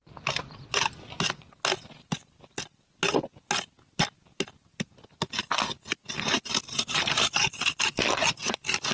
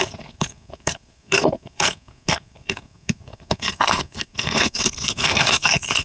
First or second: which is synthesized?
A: second